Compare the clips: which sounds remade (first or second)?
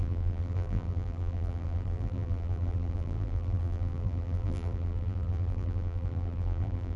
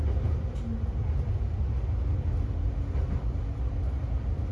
first